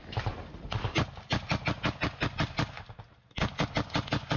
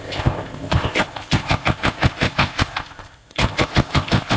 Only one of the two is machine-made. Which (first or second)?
second